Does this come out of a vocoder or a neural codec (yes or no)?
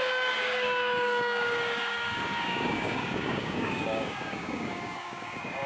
yes